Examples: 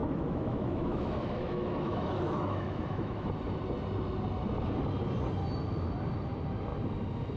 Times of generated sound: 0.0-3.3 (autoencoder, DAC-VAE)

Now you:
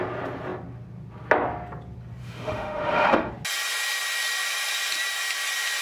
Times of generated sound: 2.2-3.3 (autoencoder, DAC-VAE)

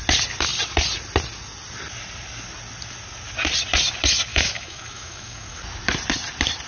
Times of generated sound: 4.3-5.6 (autoencoder, DAC-VAE)

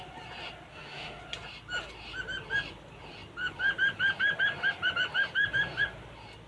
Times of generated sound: 0.7-1.2 (autoencoder, DAC-VAE)

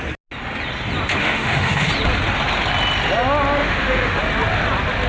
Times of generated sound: 1.2-1.9 (autoencoder, DAC-VAE); 3.6-4.2